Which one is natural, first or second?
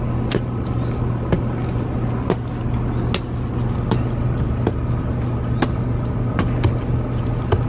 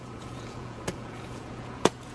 first